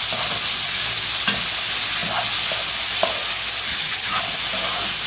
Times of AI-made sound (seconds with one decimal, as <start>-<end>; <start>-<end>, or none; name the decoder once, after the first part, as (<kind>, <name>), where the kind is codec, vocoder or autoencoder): 3.7-4.2 (vocoder, HiFi-GAN)